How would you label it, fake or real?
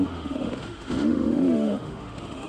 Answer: fake